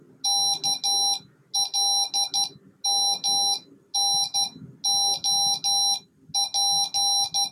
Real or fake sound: real